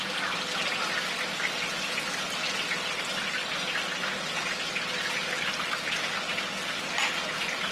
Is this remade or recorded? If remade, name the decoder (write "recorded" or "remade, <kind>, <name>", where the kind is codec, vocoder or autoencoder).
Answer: recorded